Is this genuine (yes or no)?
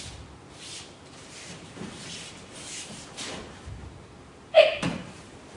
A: no